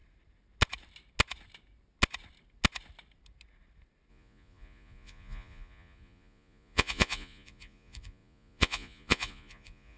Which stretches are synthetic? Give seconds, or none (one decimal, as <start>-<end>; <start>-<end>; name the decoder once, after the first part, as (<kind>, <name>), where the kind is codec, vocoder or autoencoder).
4.1-10.0 (vocoder, Vocos)